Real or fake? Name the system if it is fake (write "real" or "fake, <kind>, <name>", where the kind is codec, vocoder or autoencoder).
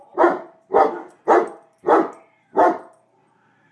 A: fake, vocoder, BigVGAN v2